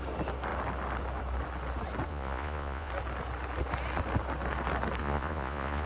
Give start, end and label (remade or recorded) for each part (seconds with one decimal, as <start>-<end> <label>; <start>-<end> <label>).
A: 0.0-2.1 recorded; 2.1-2.9 remade; 2.9-5.0 recorded; 5.0-5.9 remade